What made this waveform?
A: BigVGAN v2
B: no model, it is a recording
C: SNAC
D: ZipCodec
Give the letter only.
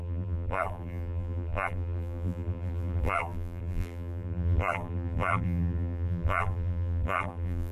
A